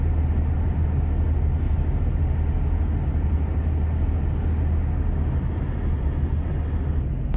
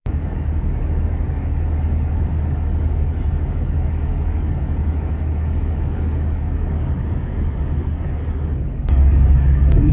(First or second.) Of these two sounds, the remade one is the second